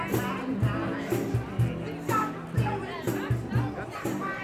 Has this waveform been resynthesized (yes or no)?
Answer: no